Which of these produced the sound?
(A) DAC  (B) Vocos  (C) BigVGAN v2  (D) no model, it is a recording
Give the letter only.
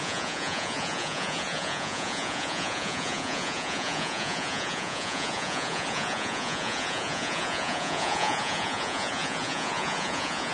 B